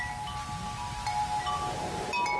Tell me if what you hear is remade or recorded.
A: recorded